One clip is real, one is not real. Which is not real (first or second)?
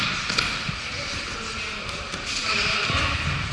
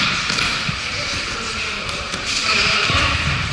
second